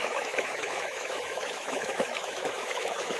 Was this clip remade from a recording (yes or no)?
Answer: yes